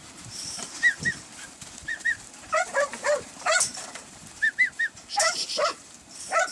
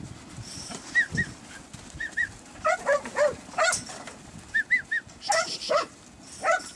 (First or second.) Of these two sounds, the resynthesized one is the first